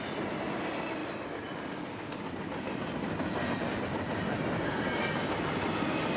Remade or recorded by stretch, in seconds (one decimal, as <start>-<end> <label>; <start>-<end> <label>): 0.0-6.2 recorded